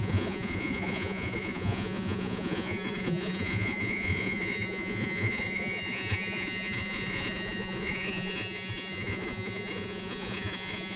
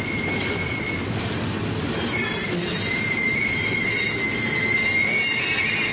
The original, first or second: second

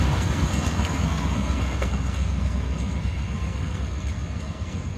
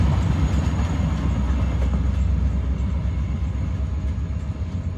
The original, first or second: second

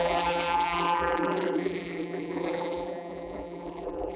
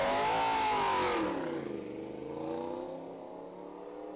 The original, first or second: second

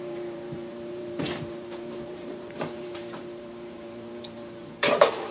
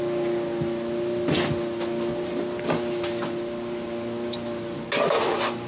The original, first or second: second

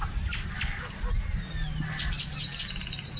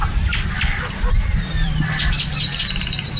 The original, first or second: first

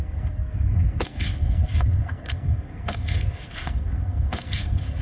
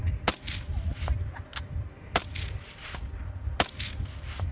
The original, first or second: second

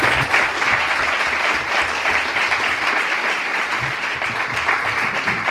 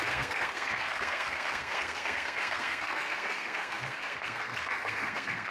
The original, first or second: first